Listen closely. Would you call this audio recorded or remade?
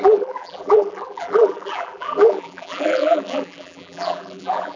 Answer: remade